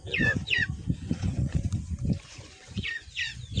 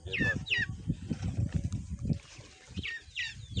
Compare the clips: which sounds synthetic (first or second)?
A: first